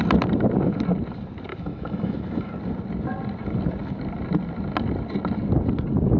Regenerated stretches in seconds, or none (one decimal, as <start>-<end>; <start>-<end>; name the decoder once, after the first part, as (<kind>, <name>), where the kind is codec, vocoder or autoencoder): 1.5-2.5 (autoencoder, DAC-VAE)